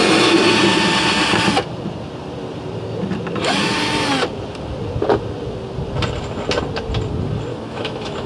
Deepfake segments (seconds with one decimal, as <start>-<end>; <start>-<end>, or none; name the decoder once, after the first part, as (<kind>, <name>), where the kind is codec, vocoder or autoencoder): 7.5-8.3 (autoencoder, DAC-VAE)